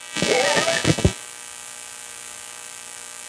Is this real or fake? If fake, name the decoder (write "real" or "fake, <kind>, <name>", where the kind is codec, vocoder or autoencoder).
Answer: real